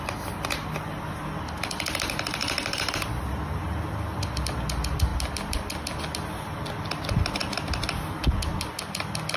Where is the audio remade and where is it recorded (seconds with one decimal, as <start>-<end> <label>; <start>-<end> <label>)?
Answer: 0.0-9.4 recorded